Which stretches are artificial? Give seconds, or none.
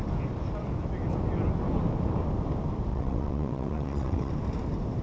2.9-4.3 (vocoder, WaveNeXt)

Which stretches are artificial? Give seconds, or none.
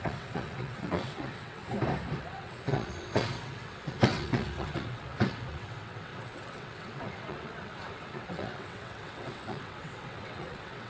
0.0-1.6 (vocoder, WaveNeXt); 2.2-10.9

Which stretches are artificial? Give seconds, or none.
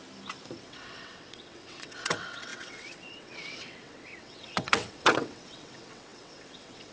0.6-6.9 (vocoder, WaveNeXt)